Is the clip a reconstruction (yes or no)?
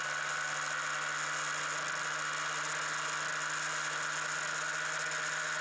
no